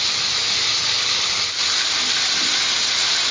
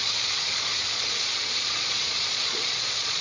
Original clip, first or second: first